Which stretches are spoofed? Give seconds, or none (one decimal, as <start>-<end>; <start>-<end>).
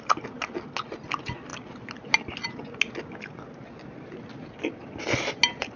none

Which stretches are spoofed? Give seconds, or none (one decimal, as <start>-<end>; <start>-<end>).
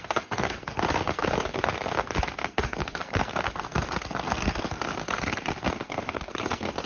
0.0-6.9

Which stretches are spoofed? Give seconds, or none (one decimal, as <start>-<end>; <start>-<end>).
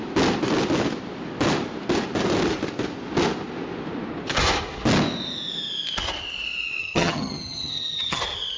6.8-8.2